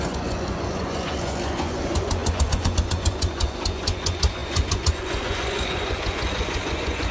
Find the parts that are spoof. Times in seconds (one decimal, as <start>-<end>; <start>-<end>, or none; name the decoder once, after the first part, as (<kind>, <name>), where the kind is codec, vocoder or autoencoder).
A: 0.0-7.1 (vocoder, Vocos)